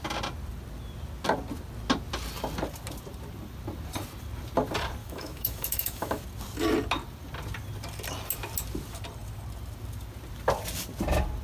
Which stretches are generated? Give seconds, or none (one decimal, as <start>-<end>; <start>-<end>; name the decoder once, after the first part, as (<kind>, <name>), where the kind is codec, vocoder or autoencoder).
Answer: 5.0-6.2 (autoencoder, DAC-VAE)